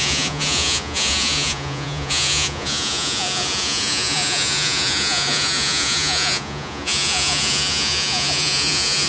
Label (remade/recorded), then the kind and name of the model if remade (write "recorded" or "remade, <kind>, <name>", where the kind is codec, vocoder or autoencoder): remade, vocoder, Vocos